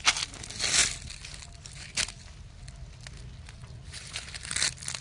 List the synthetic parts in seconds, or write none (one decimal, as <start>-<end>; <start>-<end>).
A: none